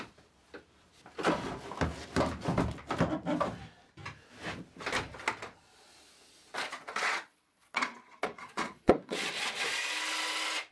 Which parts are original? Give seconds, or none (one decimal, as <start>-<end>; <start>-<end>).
0.0-6.6; 9.3-10.7

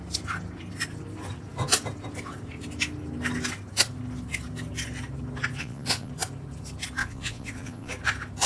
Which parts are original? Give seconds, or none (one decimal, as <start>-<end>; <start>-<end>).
0.0-5.6; 6.1-7.0; 7.9-8.5

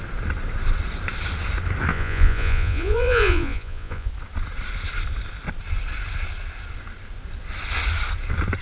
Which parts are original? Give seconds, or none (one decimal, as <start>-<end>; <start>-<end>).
0.0-1.9; 4.1-8.6

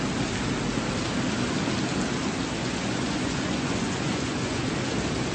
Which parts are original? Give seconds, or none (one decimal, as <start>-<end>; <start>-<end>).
0.0-2.6; 4.7-5.3